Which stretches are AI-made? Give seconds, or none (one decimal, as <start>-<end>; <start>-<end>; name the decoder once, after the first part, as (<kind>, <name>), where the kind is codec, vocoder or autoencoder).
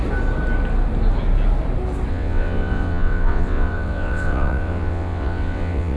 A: 2.1-6.0 (vocoder, WaveNeXt)